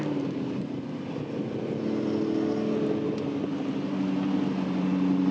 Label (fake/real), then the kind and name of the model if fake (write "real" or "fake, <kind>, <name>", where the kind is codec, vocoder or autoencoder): real